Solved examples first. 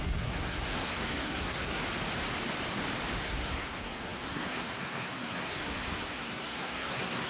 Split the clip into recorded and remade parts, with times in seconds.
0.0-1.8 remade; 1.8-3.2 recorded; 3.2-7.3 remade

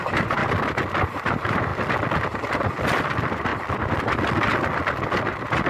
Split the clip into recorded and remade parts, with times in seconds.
0.0-0.4 remade; 0.4-1.0 recorded; 1.0-1.7 remade; 1.7-3.0 recorded; 3.0-3.5 remade; 3.5-5.2 recorded; 5.2-5.7 remade

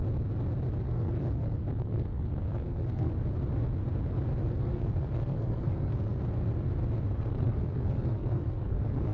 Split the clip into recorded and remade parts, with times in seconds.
0.0-0.8 recorded; 0.8-3.1 remade; 3.1-4.4 recorded; 4.4-6.2 remade; 6.2-7.2 recorded; 7.2-9.1 remade

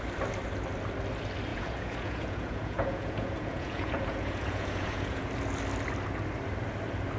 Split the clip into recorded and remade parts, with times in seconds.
0.0-1.5 recorded; 1.5-5.3 remade; 5.3-7.2 recorded

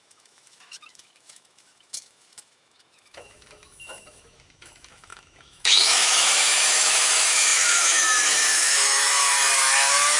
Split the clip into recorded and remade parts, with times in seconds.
0.0-10.2 remade